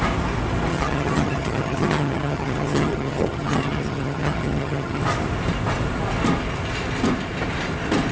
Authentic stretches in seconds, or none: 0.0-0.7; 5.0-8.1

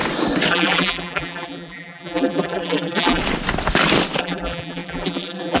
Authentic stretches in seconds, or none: 0.0-0.5; 3.2-4.2

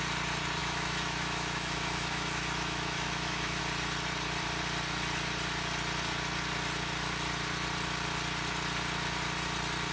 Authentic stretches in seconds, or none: 0.0-0.6; 3.6-9.9

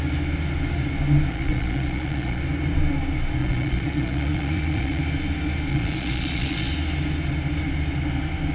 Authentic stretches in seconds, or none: 0.0-1.3; 2.4-3.4; 5.0-5.7; 6.7-8.5

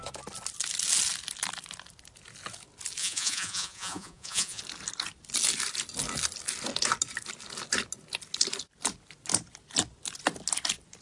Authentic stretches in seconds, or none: 0.0-3.0; 4.6-11.0

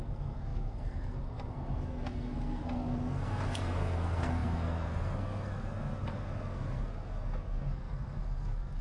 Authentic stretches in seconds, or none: none